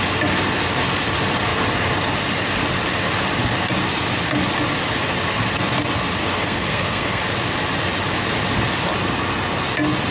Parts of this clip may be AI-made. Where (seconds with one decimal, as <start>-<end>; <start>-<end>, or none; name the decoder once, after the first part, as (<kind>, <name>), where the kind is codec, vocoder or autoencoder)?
6.2-7.2 (codec, SNAC)